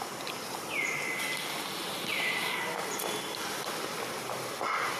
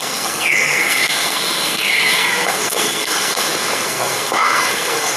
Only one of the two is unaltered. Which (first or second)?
first